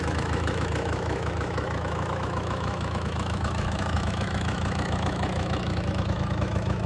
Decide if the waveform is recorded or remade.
remade